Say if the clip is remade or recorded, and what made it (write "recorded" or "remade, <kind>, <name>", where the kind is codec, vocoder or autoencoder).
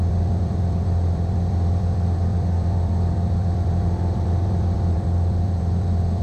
remade, vocoder, BigVGAN v2